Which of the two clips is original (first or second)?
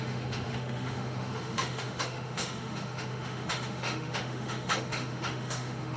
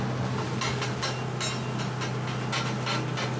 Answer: second